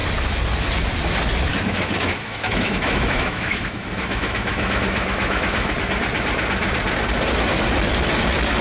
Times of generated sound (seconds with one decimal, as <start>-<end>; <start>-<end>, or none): 1.5-5.7